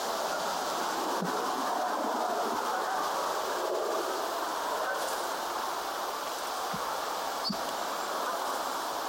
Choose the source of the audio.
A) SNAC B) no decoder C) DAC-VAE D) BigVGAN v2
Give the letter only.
B